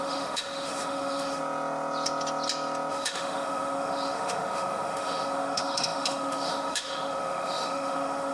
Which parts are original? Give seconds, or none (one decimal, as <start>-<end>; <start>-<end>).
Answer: 1.4-2.9